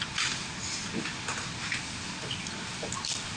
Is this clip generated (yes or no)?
no